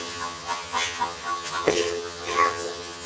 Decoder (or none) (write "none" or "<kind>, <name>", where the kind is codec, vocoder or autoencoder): vocoder, HiFi-GAN